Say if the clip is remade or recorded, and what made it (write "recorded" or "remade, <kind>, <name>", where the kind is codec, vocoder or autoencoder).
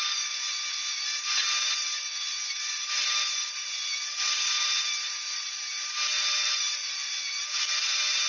recorded